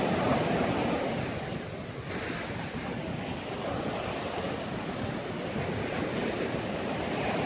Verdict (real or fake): real